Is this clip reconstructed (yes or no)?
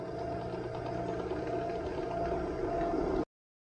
no